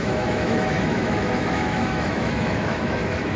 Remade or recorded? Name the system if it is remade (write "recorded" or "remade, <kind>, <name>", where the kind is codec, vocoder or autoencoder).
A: remade, autoencoder, DAC-VAE